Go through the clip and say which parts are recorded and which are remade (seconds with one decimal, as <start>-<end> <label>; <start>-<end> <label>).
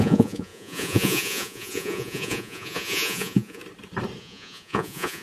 0.0-3.6 remade; 3.6-4.2 recorded; 4.2-5.2 remade